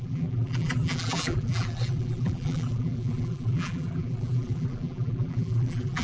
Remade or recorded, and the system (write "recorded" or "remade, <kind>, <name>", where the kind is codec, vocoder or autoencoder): remade, vocoder, BigVGAN v2